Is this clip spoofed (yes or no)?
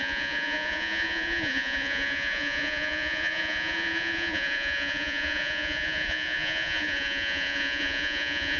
yes